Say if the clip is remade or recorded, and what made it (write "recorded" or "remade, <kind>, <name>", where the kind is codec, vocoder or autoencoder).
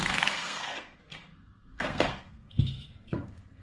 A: remade, codec, SNAC